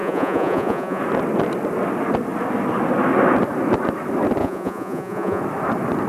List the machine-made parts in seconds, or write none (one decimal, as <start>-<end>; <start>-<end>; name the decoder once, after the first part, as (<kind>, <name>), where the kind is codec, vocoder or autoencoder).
0.0-1.0 (vocoder, Vocos); 4.4-5.4